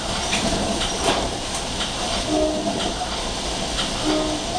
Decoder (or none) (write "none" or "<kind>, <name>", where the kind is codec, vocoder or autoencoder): none